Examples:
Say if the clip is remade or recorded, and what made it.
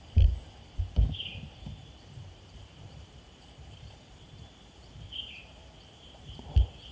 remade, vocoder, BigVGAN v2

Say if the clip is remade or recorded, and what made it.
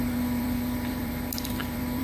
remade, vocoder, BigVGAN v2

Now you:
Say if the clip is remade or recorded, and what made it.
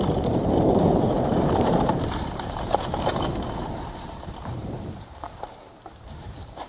remade, vocoder, BigVGAN v2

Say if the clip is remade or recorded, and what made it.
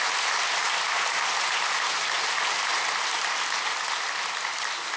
recorded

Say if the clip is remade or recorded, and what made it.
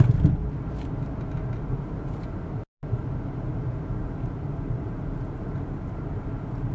recorded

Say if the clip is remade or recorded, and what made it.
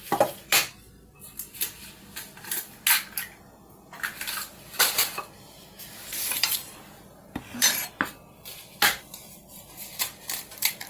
remade, vocoder, BigVGAN v2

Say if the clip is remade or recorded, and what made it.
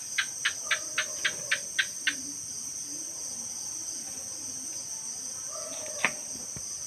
recorded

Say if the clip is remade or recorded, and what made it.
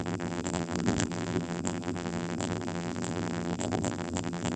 remade, vocoder, BigVGAN v2